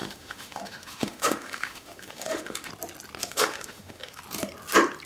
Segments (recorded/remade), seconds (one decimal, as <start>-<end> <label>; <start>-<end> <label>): 0.0-2.7 remade; 2.7-3.2 recorded; 3.2-4.2 remade; 4.2-5.1 recorded